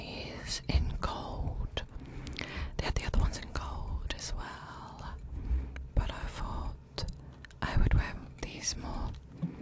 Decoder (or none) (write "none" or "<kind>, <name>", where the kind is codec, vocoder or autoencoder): none